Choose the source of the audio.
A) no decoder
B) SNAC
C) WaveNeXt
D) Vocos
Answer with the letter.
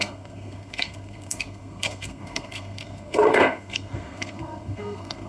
B